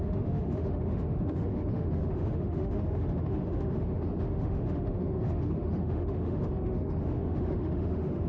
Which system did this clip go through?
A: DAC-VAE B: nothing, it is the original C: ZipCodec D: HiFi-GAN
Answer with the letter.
A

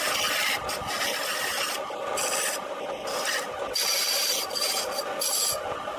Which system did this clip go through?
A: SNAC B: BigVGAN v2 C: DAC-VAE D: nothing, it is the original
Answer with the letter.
D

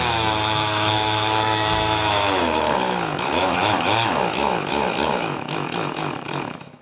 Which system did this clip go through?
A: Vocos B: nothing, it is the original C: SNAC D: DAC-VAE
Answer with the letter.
D